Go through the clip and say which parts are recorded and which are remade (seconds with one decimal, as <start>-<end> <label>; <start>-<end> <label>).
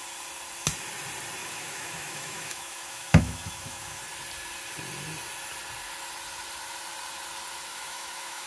0.0-1.4 recorded; 1.4-4.0 remade; 4.0-7.7 recorded; 7.7-8.5 remade